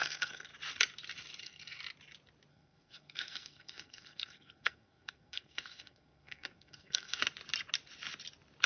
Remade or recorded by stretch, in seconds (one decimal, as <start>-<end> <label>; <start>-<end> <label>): 0.0-0.5 remade; 0.5-1.4 recorded; 1.4-1.8 remade; 1.8-2.5 recorded; 2.5-7.2 remade; 7.2-8.7 recorded